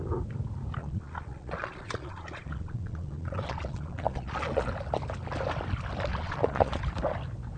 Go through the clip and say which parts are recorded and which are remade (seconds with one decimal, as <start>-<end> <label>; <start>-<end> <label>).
0.0-0.8 recorded; 0.8-4.7 remade; 4.7-6.1 recorded; 6.1-6.8 remade; 6.8-7.6 recorded